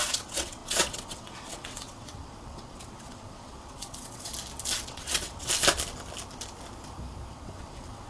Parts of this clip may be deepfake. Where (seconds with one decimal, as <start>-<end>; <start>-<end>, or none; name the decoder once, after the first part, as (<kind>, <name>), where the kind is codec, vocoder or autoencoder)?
0.0-4.3 (vocoder, WaveNeXt); 4.9-5.5; 7.3-8.1